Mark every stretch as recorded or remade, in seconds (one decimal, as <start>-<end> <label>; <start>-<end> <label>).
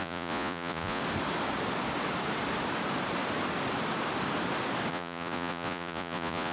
0.0-1.0 remade; 1.0-4.9 recorded; 4.9-6.5 remade